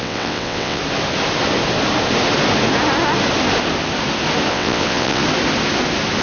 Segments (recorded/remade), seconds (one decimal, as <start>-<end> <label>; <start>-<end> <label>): 0.0-0.8 remade; 0.8-4.5 recorded; 4.5-5.2 remade; 5.2-6.2 recorded